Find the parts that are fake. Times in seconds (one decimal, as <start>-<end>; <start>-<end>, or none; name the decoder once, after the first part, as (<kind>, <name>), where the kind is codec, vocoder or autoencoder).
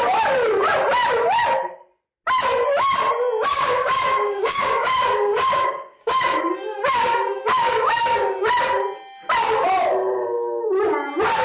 3.5-8.5 (codec, DAC)